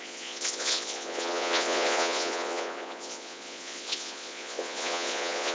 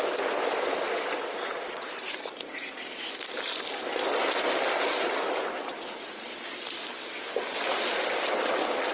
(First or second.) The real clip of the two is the second